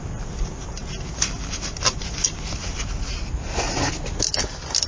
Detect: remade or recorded recorded